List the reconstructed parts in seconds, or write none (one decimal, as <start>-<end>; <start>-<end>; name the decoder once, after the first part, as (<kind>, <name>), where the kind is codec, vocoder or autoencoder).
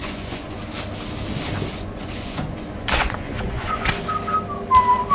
0.0-0.6 (vocoder, Vocos); 1.7-3.9